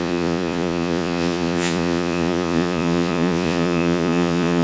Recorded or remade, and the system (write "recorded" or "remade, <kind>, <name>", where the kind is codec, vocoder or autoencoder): remade, vocoder, Vocos